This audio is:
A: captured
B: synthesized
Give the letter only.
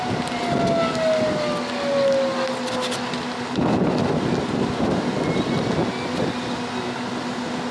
A